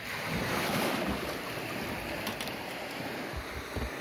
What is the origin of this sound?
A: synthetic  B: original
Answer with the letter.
B